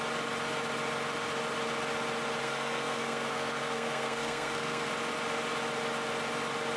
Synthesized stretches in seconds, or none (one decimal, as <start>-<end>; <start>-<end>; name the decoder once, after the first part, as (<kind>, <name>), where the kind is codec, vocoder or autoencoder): 2.4-4.9 (codec, SNAC)